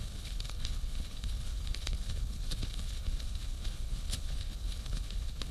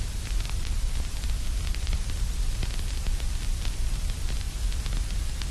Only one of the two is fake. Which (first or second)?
first